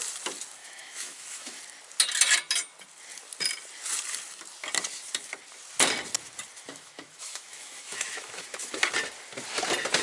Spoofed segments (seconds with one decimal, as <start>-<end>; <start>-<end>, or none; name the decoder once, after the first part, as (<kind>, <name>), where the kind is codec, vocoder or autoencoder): 0.6-1.6 (autoencoder, DAC-VAE); 6.7-8.7